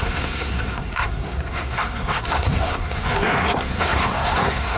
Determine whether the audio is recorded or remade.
remade